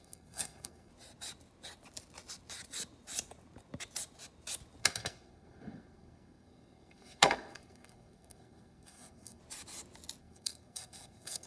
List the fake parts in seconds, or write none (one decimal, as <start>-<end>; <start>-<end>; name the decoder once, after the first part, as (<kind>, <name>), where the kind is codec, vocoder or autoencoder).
0.0-0.9 (codec, SNAC); 4.8-9.4; 10.2-11.5